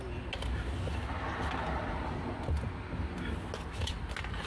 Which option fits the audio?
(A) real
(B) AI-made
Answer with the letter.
A